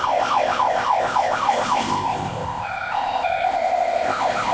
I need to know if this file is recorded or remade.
remade